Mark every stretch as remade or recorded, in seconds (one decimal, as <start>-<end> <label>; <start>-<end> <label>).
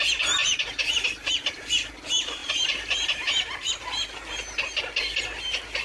0.0-0.4 recorded; 0.4-1.7 remade; 1.7-2.4 recorded; 2.4-3.8 remade; 3.8-5.8 recorded